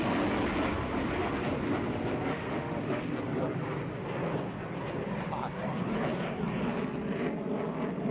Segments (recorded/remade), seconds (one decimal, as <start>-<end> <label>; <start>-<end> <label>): 0.0-2.3 recorded; 2.3-3.0 remade; 3.0-8.1 recorded